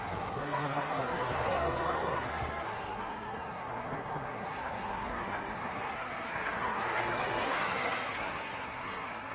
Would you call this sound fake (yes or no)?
yes